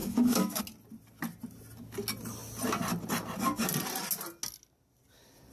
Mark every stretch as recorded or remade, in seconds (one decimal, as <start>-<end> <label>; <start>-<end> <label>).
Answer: 0.0-0.6 remade; 0.6-5.5 recorded

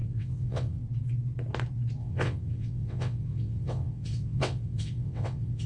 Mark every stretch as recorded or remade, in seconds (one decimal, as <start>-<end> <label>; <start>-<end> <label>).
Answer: 0.0-0.8 remade; 0.8-2.0 recorded; 2.0-5.7 remade

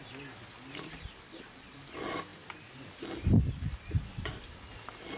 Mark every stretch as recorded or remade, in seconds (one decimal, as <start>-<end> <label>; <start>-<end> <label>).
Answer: 0.0-5.2 recorded

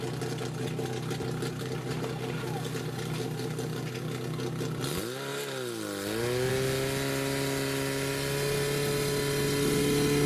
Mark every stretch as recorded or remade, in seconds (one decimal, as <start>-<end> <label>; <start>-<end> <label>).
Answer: 0.0-10.3 recorded